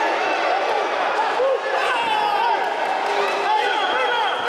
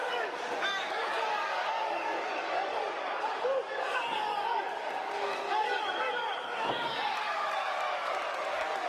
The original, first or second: first